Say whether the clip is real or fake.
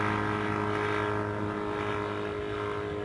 real